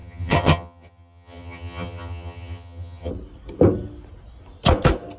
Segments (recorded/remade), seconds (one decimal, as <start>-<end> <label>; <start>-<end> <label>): 0.0-3.1 remade; 3.1-5.2 recorded